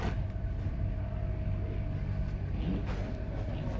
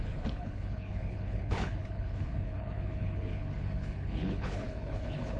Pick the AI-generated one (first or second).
second